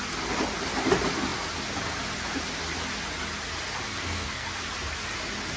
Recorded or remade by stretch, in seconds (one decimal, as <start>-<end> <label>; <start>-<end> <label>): 0.0-3.9 recorded; 3.9-4.5 remade; 4.5-5.6 recorded